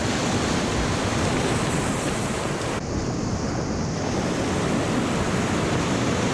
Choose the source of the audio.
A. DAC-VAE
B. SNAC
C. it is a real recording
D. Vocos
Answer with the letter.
C